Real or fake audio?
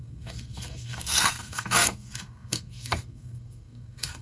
fake